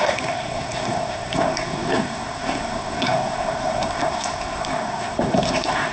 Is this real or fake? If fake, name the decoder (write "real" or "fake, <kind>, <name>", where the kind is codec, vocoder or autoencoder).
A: fake, codec, SNAC